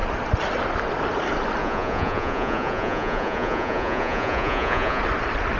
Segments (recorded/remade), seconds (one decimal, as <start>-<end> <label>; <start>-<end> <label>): 0.0-1.6 recorded; 1.6-5.0 remade; 5.0-5.6 recorded